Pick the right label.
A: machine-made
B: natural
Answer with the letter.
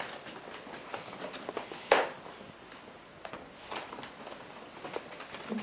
B